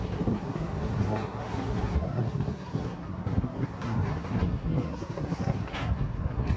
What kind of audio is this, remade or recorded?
remade